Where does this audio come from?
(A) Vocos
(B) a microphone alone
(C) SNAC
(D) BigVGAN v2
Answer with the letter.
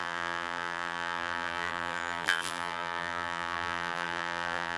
D